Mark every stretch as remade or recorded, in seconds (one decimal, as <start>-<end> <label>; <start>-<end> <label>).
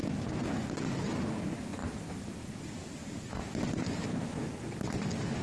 0.0-5.4 recorded